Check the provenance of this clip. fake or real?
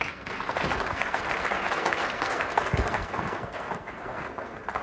fake